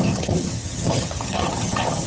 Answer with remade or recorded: remade